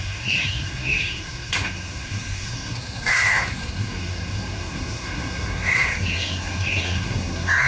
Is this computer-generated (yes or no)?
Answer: yes